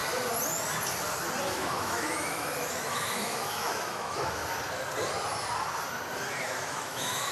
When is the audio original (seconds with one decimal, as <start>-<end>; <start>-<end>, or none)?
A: 0.0-1.5; 4.4-6.4